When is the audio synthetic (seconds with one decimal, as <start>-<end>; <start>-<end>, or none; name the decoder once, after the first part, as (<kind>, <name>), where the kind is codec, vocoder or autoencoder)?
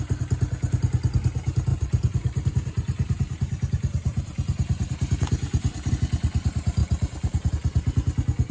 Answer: 1.7-5.9 (vocoder, BigVGAN v2)